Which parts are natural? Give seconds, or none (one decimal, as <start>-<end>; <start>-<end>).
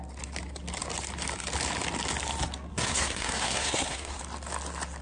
0.0-2.7; 4.2-5.0